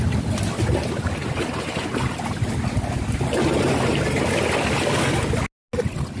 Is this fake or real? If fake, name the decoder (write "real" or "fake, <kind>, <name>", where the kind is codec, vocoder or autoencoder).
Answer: real